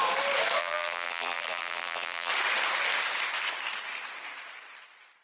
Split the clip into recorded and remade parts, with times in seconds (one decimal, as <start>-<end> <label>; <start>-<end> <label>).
0.0-0.6 recorded; 0.6-2.3 remade; 2.3-5.2 recorded